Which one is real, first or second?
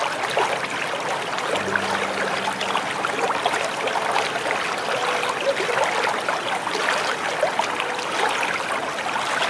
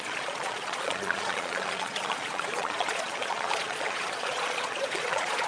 first